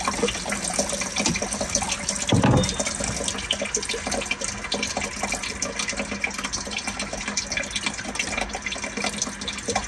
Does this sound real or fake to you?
real